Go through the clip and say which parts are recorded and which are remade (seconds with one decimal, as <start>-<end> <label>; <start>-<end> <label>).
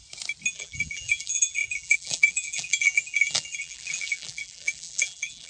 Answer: 0.0-0.5 recorded; 0.5-5.5 remade